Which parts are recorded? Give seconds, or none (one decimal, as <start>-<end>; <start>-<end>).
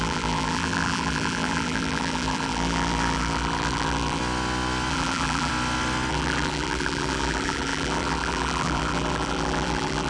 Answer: 4.2-4.9; 5.5-6.1